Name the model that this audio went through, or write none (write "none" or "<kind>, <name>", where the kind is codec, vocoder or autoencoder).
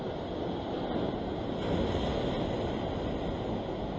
none